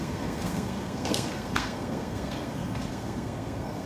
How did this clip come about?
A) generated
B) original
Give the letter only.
A